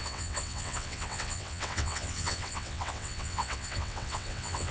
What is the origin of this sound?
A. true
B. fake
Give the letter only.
B